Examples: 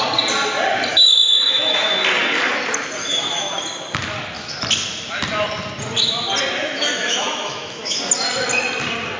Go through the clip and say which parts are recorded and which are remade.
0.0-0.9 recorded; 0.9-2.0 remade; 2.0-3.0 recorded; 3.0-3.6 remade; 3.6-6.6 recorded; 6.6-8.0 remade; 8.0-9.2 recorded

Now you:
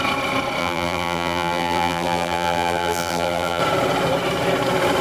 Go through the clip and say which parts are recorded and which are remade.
0.0-0.6 recorded; 0.6-3.6 remade; 3.6-5.0 recorded

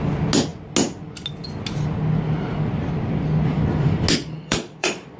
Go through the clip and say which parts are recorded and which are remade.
0.0-4.2 recorded; 4.2-5.2 remade

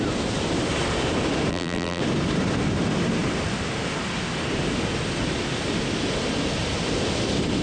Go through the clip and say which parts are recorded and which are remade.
0.0-1.5 recorded; 1.5-2.0 remade; 2.0-7.6 recorded

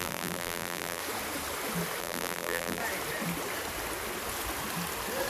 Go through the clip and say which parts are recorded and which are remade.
0.0-1.0 remade; 1.0-2.0 recorded; 2.0-2.8 remade; 2.8-5.3 recorded

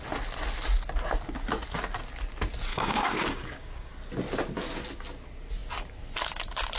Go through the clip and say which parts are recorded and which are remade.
0.0-2.7 recorded; 2.7-3.9 remade; 3.9-6.8 recorded

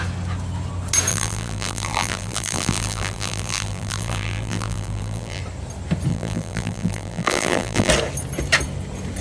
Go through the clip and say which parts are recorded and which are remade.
0.0-1.1 recorded; 1.1-5.4 remade; 5.4-6.1 recorded; 6.1-7.9 remade; 7.9-9.2 recorded